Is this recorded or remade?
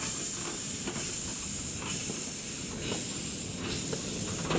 recorded